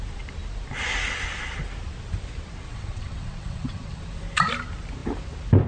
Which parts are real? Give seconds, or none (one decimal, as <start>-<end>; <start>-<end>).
0.0-2.7; 4.0-5.7